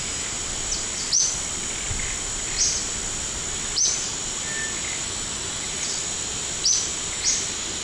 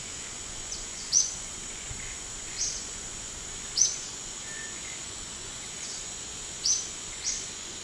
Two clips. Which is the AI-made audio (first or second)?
second